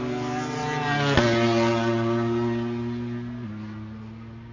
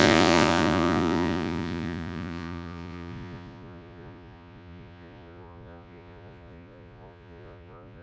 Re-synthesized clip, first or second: second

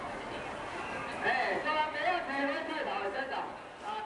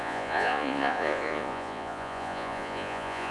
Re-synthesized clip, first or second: second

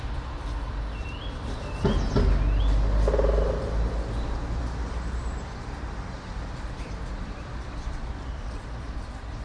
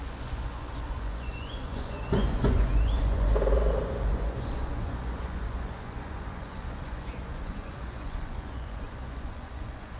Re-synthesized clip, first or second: second